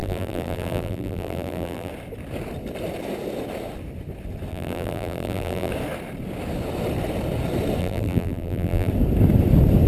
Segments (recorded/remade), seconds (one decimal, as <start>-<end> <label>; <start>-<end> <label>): 0.0-1.9 remade; 1.9-4.5 recorded; 4.5-5.7 remade; 5.7-7.8 recorded; 7.8-8.9 remade; 8.9-9.9 recorded